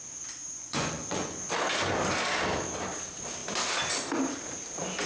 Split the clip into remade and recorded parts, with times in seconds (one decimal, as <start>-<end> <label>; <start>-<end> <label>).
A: 0.0-0.4 recorded; 0.4-1.4 remade; 1.4-5.1 recorded